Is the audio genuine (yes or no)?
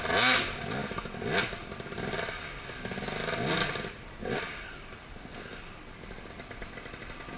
yes